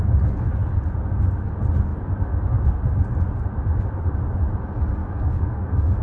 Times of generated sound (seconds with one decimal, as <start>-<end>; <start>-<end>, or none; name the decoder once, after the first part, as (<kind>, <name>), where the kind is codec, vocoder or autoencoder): 5.0-6.0 (codec, DAC)